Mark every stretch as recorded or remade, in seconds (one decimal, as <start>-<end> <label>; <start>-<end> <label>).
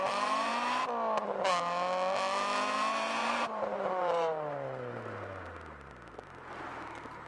0.0-0.5 remade; 0.5-3.2 recorded; 3.2-5.9 remade; 5.9-7.3 recorded